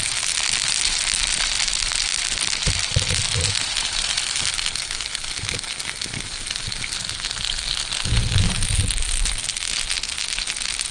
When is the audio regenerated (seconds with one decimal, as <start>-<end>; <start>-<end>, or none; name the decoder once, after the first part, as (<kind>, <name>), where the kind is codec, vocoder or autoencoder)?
none